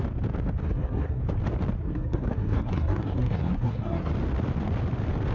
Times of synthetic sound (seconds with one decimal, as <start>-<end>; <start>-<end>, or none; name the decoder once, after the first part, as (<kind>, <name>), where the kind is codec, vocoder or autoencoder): 0.6-1.2 (codec, SNAC); 1.8-4.1